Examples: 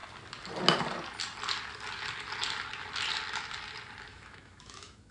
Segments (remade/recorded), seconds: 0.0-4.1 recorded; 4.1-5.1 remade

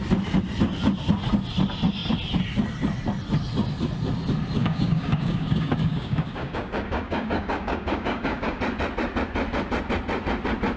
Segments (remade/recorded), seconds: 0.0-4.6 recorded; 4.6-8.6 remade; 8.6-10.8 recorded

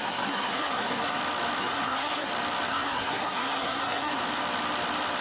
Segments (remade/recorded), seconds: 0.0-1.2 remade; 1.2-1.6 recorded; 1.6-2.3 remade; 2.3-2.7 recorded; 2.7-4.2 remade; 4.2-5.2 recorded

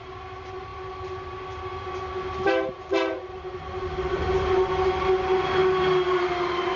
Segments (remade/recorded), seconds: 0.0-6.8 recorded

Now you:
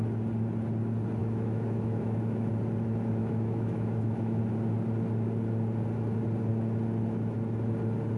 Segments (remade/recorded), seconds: 0.0-1.2 recorded; 1.2-2.5 remade; 2.5-3.2 recorded; 3.2-4.4 remade; 4.4-8.2 recorded

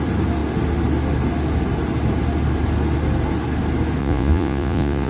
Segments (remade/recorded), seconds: 0.0-4.0 recorded; 4.0-5.1 remade

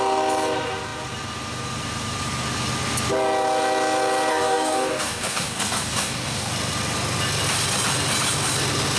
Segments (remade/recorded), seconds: 0.0-4.3 recorded; 4.3-6.5 remade; 6.5-9.0 recorded

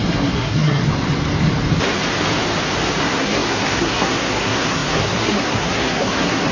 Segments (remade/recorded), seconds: 0.0-0.8 remade; 0.8-3.0 recorded; 3.0-6.5 remade